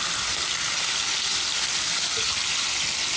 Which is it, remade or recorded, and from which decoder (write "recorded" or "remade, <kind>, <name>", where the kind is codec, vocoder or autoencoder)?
recorded